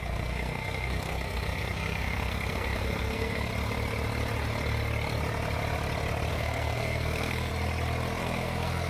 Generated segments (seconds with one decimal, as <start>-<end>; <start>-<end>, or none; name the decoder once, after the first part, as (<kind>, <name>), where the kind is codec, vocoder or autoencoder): 0.0-3.5 (codec, SNAC); 6.3-7.5; 8.2-8.9